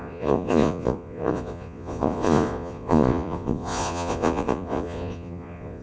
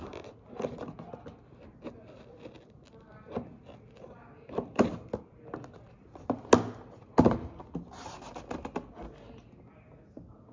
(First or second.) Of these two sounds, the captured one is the second